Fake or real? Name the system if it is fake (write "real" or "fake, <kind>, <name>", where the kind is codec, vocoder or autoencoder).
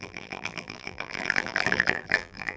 fake, vocoder, BigVGAN v2